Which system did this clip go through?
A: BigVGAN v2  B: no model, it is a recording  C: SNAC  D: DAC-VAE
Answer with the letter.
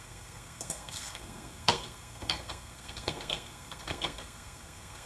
C